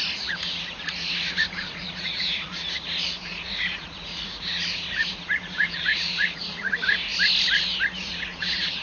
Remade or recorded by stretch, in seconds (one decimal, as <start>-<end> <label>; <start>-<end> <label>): 0.0-7.1 remade; 7.1-8.0 recorded; 8.0-8.8 remade